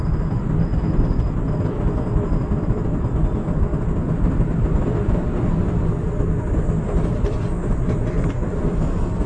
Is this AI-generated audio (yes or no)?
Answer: no